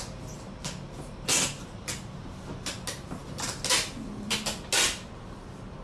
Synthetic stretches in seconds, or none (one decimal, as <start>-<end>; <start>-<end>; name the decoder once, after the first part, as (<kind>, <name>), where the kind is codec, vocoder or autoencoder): none